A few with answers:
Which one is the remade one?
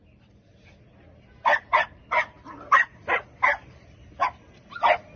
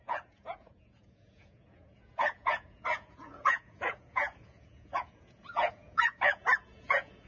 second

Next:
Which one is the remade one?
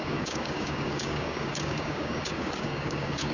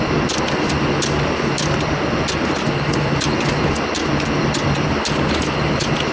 first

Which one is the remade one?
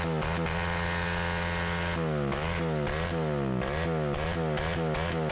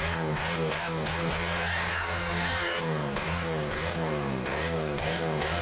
second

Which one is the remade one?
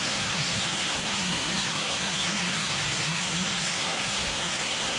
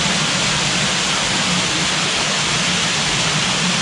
first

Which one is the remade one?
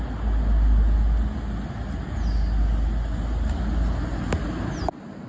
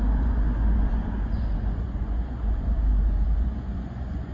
second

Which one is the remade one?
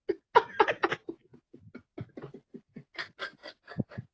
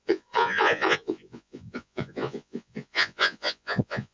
second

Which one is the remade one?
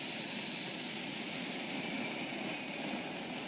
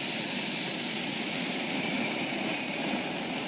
second